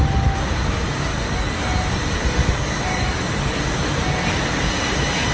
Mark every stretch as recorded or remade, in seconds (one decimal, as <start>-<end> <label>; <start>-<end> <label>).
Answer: 0.0-1.1 recorded; 1.1-1.6 remade; 1.6-2.4 recorded; 2.4-3.6 remade; 3.6-5.3 recorded